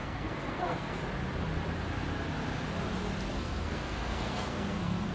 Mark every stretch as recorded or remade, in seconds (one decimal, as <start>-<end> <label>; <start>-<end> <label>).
0.0-1.0 remade; 1.0-3.3 recorded; 3.3-5.1 remade